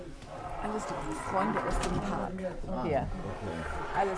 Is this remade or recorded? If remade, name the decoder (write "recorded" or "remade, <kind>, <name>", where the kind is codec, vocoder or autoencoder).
recorded